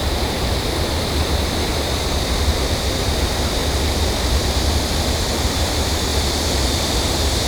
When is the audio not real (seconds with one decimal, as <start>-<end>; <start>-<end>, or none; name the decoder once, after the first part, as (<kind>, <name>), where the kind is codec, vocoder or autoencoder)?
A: 0.0-1.7 (vocoder, BigVGAN v2); 3.0-3.6; 5.3-6.1; 7.1-7.5

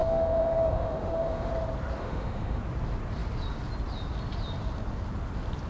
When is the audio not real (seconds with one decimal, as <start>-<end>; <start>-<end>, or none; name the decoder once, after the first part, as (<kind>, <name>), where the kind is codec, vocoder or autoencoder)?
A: 0.0-1.5 (autoencoder, DAC-VAE); 2.0-2.6

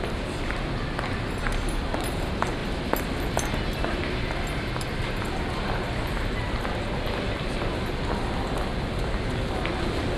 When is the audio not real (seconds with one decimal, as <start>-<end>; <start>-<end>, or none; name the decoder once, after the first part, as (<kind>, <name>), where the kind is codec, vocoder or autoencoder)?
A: none

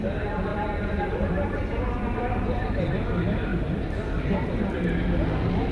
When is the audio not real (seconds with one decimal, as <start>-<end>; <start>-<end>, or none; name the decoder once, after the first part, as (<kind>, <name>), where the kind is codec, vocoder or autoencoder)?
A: 0.5-2.2 (vocoder, BigVGAN v2)

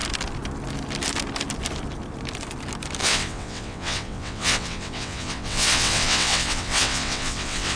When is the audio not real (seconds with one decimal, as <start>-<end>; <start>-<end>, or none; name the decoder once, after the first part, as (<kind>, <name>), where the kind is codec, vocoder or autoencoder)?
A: 3.0-7.8 (vocoder, WaveNeXt)